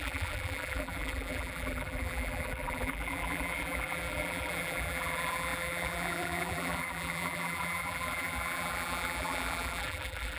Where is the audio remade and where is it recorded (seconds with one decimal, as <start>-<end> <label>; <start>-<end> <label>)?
0.0-10.4 remade